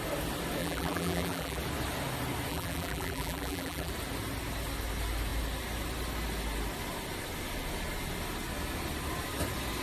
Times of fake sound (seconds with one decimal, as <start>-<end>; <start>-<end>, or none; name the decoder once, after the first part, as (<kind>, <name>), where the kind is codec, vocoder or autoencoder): 0.6-1.6 (vocoder, BigVGAN v2); 2.5-3.9